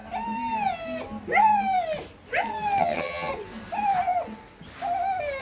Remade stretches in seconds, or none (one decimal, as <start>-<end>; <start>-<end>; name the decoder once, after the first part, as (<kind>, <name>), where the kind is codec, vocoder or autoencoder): 2.8-3.3 (vocoder, HiFi-GAN)